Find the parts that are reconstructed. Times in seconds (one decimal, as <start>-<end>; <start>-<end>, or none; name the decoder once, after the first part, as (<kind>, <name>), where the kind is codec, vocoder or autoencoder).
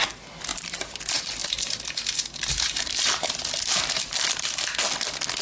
0.5-1.0 (vocoder, BigVGAN v2); 1.4-4.6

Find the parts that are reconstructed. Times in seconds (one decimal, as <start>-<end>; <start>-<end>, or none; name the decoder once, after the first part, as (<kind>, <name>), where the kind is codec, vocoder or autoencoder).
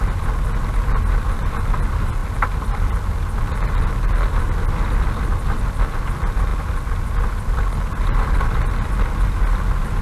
none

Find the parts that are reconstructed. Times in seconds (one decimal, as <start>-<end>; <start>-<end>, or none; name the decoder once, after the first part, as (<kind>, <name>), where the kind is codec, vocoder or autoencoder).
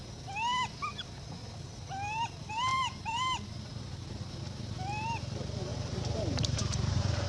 2.7-4.2 (vocoder, BigVGAN v2); 5.7-7.3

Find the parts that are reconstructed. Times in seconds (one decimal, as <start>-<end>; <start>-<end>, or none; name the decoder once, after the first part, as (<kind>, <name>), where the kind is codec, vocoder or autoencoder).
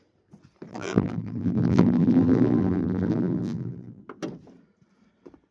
0.7-4.0 (vocoder, BigVGAN v2)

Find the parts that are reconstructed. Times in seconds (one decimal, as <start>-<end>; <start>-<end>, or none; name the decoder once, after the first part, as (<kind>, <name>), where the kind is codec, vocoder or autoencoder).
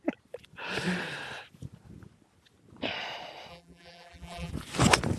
3.5-4.5 (vocoder, BigVGAN v2)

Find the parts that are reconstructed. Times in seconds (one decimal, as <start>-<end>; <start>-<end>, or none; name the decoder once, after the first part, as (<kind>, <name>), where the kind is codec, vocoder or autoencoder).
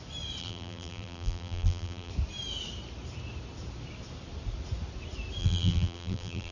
0.4-2.1 (vocoder, BigVGAN v2); 5.4-6.5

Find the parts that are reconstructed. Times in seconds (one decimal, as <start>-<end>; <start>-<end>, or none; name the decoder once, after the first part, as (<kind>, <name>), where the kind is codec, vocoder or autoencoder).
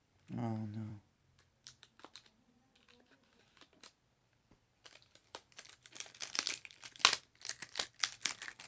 0.4-2.4 (vocoder, BigVGAN v2); 4.2-7.0